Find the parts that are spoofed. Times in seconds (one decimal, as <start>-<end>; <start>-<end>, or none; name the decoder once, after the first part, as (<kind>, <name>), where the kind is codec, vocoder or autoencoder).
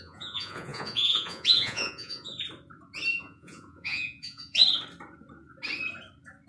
0.0-2.3 (vocoder, Vocos); 3.1-4.6